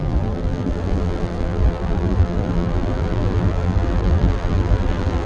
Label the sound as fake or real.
fake